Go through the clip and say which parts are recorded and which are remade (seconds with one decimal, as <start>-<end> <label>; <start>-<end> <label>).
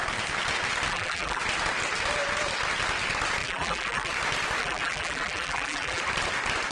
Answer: 0.0-0.9 recorded; 0.9-1.4 remade; 1.4-3.4 recorded; 3.4-4.1 remade; 4.1-4.6 recorded; 4.6-6.0 remade; 6.0-6.7 recorded